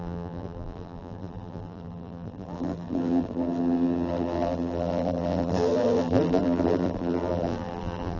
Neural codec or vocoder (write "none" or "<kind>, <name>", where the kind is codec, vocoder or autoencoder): vocoder, BigVGAN v2